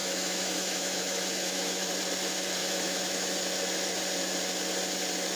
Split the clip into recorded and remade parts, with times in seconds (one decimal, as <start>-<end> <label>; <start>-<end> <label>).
0.0-1.9 remade; 1.9-2.6 recorded; 2.6-3.3 remade; 3.3-5.4 recorded